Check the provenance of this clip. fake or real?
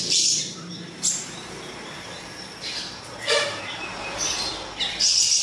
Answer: fake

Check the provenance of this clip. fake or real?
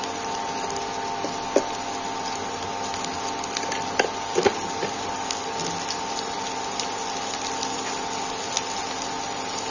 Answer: real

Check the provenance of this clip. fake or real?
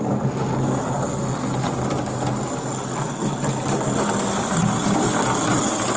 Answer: real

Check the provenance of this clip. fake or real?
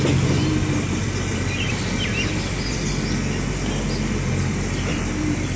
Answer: fake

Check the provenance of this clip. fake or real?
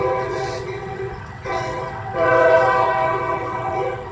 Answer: fake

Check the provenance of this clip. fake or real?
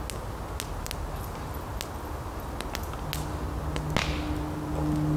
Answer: real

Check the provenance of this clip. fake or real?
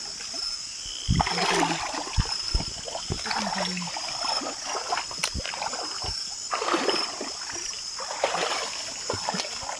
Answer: real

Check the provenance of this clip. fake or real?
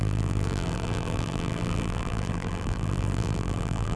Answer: fake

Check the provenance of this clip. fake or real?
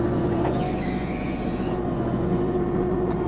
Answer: fake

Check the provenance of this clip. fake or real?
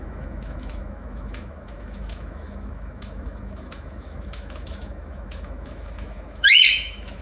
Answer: fake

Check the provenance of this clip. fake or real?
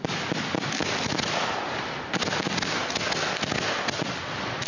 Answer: real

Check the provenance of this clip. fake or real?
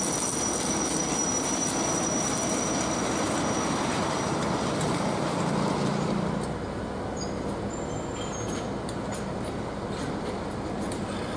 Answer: real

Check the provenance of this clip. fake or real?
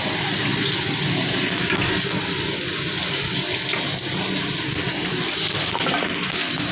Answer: real